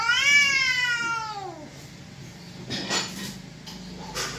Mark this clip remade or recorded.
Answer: recorded